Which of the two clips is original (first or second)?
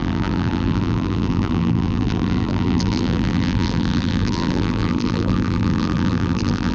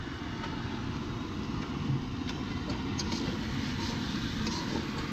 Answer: second